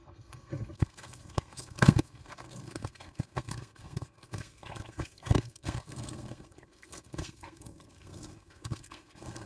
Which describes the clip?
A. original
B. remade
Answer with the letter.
B